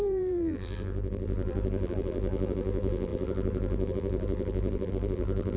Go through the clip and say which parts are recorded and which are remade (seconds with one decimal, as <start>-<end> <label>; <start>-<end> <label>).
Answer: 0.0-5.6 remade